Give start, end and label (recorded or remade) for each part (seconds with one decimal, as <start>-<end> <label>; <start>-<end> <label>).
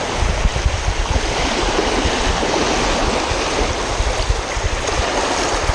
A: 0.0-5.7 recorded